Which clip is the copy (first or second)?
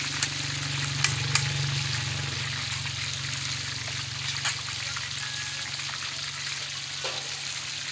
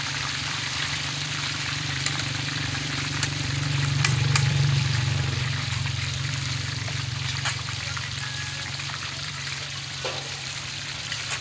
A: second